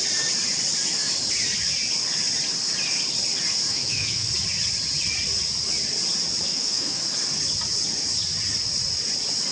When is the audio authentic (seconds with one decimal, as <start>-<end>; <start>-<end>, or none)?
0.0-3.7; 4.3-6.5; 7.0-9.5